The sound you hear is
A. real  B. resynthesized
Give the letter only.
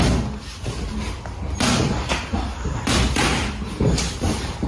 A